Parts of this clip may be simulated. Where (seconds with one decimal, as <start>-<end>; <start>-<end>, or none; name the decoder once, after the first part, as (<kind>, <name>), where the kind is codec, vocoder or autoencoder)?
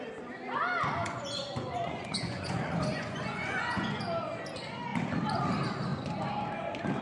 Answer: 1.0-4.0 (vocoder, Vocos)